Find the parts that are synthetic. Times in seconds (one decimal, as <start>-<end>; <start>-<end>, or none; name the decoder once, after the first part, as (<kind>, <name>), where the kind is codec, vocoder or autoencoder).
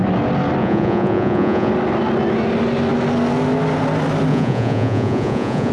0.6-1.7 (vocoder, Vocos); 4.3-5.7